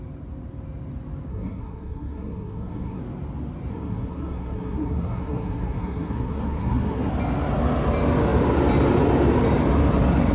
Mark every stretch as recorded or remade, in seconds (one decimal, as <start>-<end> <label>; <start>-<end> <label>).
0.0-1.3 recorded; 1.3-3.0 remade; 3.0-3.7 recorded; 3.7-7.1 remade; 7.1-10.3 recorded